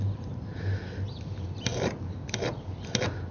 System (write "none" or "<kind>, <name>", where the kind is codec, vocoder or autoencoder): none